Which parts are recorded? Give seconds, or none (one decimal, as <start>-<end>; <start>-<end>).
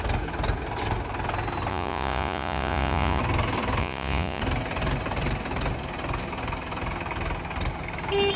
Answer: 0.0-1.7; 3.2-3.8; 4.4-8.4